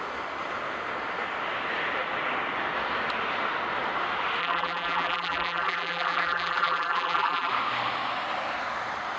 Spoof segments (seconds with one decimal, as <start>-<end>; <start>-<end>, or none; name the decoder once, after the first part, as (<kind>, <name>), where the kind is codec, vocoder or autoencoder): 4.4-7.5 (vocoder, BigVGAN v2)